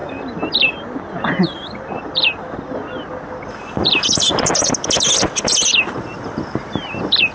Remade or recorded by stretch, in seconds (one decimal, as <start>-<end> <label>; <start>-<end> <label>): 0.0-7.3 recorded